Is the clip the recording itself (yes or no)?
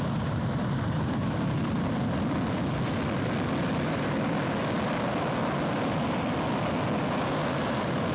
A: yes